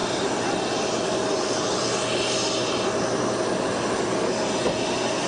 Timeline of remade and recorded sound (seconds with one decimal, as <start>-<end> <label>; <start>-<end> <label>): 0.0-5.3 recorded

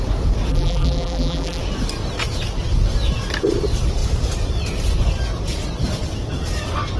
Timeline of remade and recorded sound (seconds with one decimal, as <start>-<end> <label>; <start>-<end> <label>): 0.0-0.5 recorded; 0.5-1.6 remade; 1.6-7.0 recorded